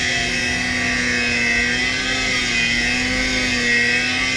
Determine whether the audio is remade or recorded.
recorded